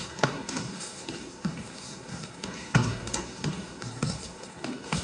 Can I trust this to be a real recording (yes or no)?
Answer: no